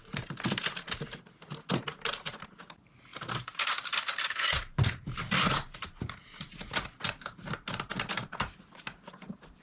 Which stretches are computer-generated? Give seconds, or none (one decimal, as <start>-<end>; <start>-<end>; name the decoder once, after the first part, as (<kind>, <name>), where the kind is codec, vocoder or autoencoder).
none